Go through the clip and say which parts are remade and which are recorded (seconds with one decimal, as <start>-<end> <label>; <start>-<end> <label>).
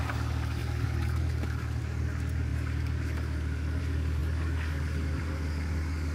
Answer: 0.0-6.1 remade